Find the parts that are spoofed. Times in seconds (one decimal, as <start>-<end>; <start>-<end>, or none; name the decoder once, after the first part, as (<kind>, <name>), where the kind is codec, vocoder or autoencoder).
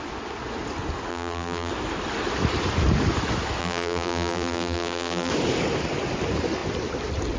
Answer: 1.1-1.7 (vocoder, BigVGAN v2); 3.6-5.3